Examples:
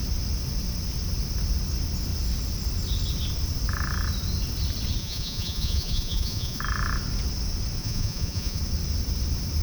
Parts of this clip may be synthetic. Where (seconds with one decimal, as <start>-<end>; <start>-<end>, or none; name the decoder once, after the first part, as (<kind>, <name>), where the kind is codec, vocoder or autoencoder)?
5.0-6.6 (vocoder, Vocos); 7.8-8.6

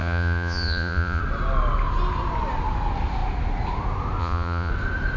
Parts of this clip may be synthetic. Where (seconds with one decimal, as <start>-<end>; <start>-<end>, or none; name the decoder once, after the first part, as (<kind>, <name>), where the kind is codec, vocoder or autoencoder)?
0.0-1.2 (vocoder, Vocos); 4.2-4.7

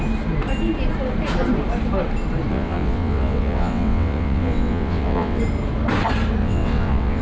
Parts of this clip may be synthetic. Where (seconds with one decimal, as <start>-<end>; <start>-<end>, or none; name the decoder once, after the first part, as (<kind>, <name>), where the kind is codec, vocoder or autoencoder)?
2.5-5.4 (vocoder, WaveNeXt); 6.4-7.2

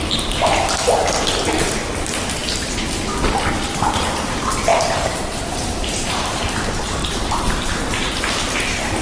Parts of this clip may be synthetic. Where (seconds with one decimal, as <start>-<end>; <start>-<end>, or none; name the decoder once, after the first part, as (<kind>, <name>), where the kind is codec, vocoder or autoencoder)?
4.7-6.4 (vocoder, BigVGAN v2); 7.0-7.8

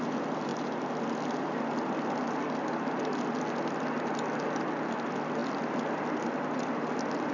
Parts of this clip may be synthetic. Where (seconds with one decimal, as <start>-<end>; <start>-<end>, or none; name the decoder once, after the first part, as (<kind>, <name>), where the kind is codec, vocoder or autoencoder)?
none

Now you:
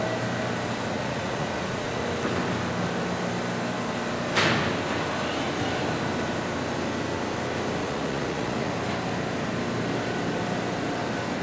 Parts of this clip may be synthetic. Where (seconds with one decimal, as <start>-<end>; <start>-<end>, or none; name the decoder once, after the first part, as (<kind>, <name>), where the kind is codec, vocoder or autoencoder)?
0.9-2.0 (vocoder, Vocos); 7.8-8.7